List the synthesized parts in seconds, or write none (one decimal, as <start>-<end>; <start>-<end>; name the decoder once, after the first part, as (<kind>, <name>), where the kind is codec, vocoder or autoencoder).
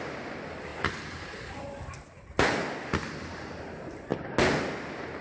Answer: none